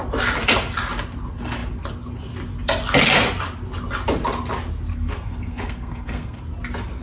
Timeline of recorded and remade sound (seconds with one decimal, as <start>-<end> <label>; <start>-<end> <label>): 0.0-4.9 recorded; 4.9-6.4 remade; 6.4-7.0 recorded

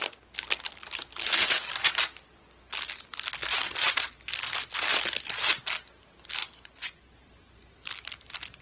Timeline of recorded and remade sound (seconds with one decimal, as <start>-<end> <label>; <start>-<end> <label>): 0.0-6.4 recorded; 6.4-7.1 remade; 7.1-8.6 recorded

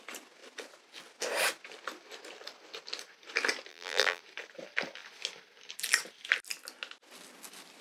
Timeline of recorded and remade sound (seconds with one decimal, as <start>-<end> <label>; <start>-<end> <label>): 0.0-3.7 recorded; 3.7-4.2 remade; 4.2-7.8 recorded